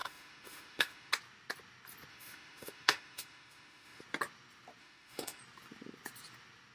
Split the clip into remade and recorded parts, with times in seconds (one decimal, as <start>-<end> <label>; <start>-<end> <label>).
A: 0.0-1.1 remade; 1.1-2.1 recorded; 2.1-4.0 remade; 4.0-4.8 recorded; 4.8-5.4 remade; 5.4-6.7 recorded